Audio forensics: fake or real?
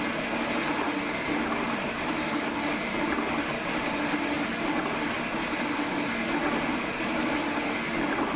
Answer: real